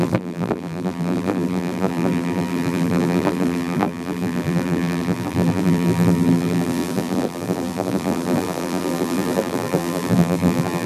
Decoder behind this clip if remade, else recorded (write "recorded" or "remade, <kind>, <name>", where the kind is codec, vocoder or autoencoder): remade, vocoder, BigVGAN v2